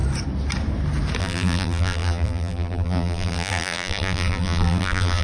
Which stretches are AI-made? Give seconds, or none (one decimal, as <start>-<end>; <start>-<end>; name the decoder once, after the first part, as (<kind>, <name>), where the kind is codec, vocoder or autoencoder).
1.2-5.2 (vocoder, BigVGAN v2)